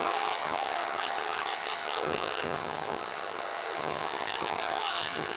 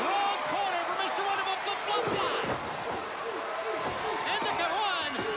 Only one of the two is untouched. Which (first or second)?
second